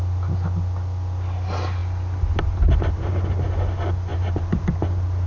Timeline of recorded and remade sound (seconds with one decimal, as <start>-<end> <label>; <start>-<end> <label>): 0.0-4.1 recorded; 4.1-4.7 remade; 4.7-5.3 recorded